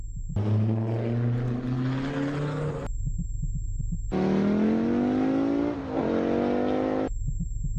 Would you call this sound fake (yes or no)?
no